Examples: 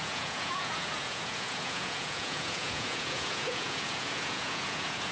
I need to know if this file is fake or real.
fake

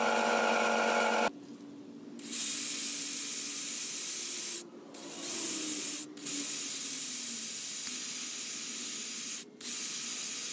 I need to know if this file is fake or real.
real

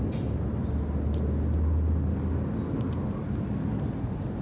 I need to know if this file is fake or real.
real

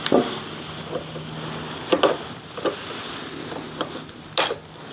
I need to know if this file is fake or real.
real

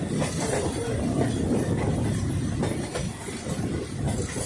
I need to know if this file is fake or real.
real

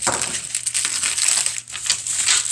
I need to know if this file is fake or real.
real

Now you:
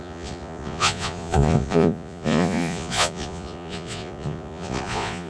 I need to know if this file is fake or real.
fake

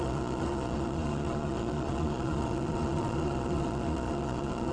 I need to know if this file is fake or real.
fake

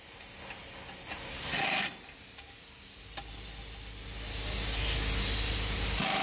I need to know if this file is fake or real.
real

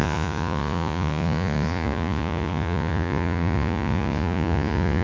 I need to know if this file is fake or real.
fake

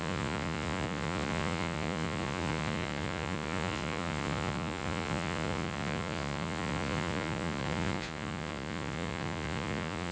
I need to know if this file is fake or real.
fake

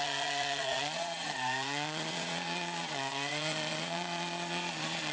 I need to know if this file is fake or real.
fake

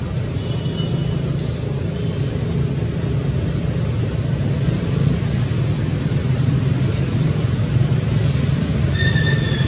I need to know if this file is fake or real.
real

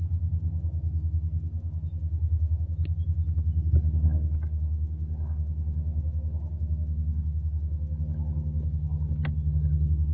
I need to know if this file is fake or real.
real